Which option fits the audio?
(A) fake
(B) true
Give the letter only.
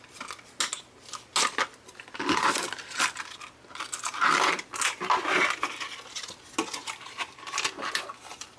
B